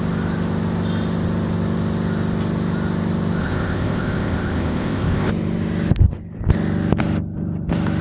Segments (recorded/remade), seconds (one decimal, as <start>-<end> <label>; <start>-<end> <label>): 0.0-3.4 recorded; 3.4-5.3 remade; 5.3-8.0 recorded